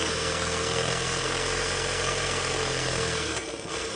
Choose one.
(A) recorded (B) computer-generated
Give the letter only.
B